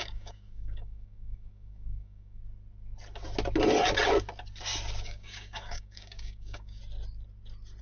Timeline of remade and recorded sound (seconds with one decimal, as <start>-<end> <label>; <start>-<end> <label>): 0.0-2.4 remade; 2.4-5.0 recorded; 5.0-6.8 remade; 6.8-7.8 recorded